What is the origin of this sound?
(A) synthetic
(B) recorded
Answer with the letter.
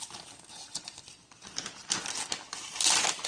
B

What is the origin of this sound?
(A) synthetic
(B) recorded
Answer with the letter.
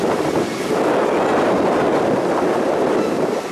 B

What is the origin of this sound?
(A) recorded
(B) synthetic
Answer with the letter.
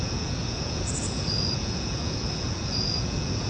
B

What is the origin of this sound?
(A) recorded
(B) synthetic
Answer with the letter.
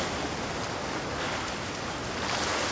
A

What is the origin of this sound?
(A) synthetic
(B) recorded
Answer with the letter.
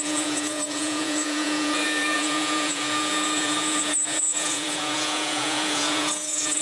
A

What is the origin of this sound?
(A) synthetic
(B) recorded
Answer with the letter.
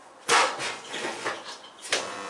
A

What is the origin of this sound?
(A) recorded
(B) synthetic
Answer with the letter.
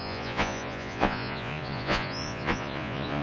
B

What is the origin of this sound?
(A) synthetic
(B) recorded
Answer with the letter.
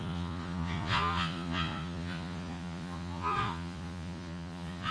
A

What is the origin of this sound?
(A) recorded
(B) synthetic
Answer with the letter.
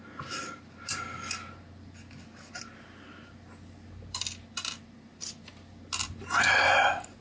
A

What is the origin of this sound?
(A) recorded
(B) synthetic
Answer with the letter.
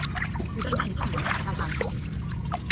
A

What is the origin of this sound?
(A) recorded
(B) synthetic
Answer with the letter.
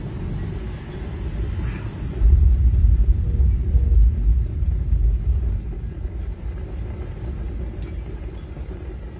A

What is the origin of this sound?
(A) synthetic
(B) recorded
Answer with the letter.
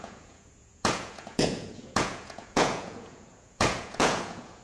A